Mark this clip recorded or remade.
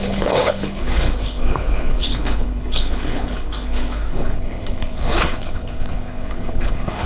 remade